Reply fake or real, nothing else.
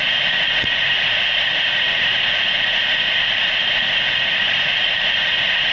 fake